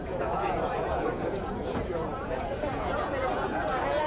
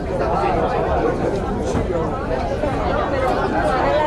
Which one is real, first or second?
second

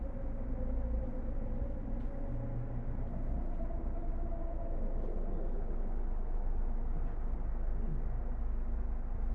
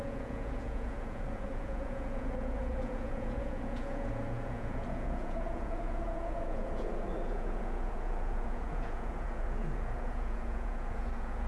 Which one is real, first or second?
first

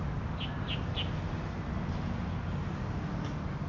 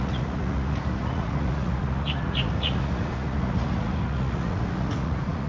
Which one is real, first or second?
first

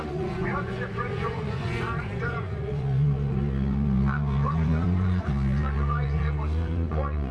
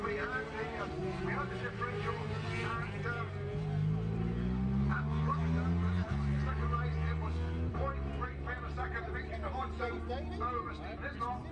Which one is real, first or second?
second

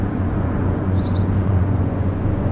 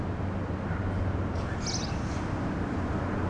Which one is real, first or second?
second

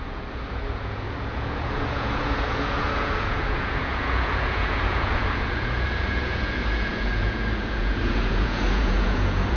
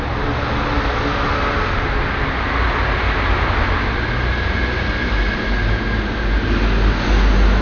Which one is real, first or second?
second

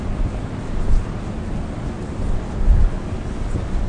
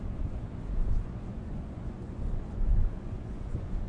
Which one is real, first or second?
first